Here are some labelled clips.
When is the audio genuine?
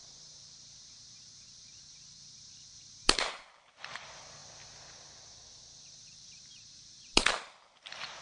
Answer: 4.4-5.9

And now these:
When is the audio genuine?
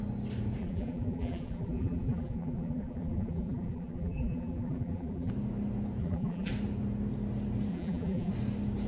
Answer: 0.0-0.6; 5.3-6.0; 6.5-7.7; 8.3-8.9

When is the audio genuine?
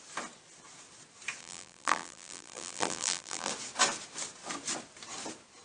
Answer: 0.0-1.4; 3.5-5.6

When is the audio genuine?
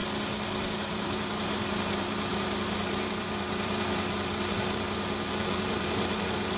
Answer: 0.0-0.6